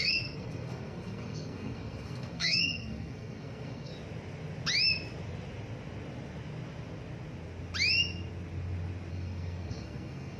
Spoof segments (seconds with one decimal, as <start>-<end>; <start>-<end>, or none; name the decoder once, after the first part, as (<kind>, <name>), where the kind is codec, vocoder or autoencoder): 0.0-3.9 (codec, SNAC); 9.1-10.4